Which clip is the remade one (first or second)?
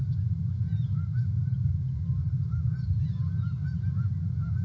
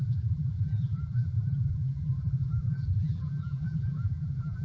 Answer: second